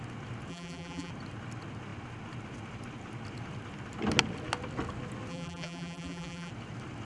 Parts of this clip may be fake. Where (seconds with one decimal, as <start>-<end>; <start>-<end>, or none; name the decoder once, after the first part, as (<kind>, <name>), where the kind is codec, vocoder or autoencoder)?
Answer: 0.5-1.1 (vocoder, BigVGAN v2); 5.3-6.5